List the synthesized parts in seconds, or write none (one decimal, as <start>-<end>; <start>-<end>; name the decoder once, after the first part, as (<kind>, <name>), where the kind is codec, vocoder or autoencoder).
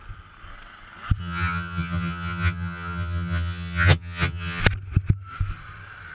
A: 1.2-4.6 (vocoder, HiFi-GAN)